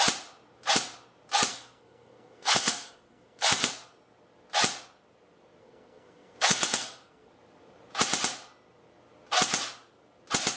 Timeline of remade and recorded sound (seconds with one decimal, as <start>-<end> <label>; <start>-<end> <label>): 0.0-1.5 recorded; 1.5-3.7 remade; 3.7-5.6 recorded; 5.6-7.3 remade; 7.3-10.6 recorded